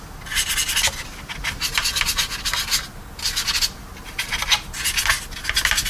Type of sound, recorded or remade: recorded